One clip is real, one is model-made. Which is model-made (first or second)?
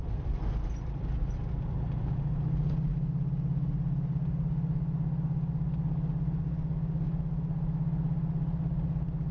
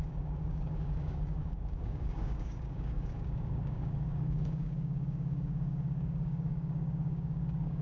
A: second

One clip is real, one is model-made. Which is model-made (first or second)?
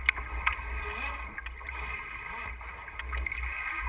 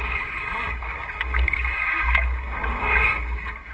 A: second